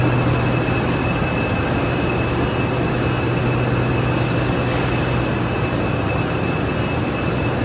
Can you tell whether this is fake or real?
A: real